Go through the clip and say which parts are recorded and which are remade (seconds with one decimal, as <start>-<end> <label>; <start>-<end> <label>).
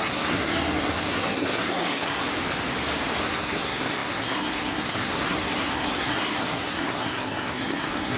0.0-2.2 remade; 2.2-3.2 recorded; 3.2-8.2 remade